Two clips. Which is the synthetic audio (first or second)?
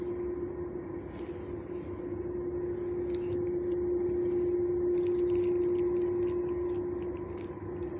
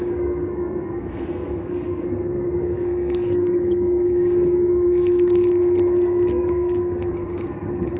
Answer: second